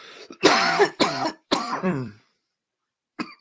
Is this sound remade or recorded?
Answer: remade